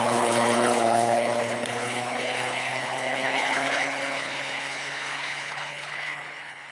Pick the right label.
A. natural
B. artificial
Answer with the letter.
B